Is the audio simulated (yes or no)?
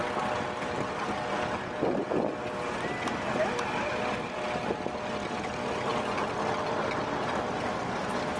no